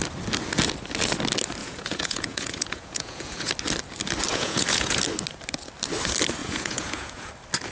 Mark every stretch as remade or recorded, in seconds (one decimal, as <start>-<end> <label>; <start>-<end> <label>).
0.0-1.6 recorded; 1.6-3.5 remade; 3.5-4.3 recorded; 4.3-5.0 remade; 5.0-6.4 recorded; 6.4-7.3 remade; 7.3-7.7 recorded